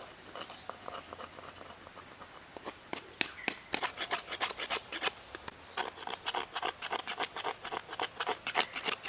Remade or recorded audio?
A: recorded